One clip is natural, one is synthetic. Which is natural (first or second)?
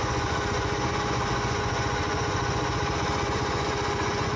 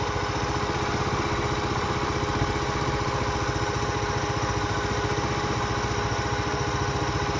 second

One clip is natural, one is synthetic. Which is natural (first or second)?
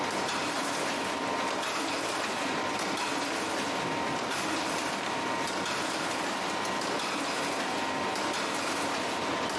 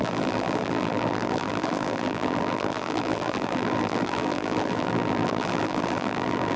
first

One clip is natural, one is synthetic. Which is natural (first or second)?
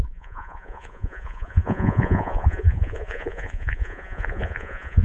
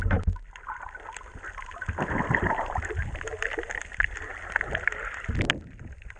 second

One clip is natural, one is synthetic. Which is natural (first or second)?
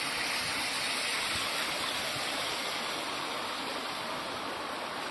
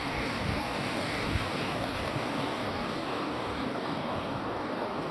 first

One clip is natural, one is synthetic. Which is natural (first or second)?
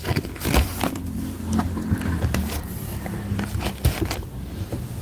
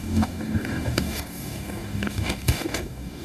first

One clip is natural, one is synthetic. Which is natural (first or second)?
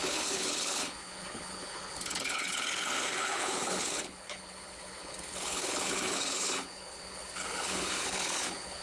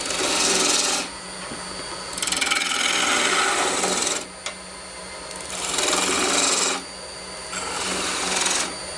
second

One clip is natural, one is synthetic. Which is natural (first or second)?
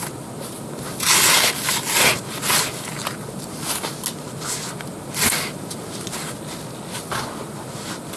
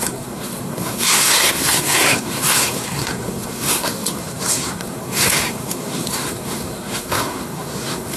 first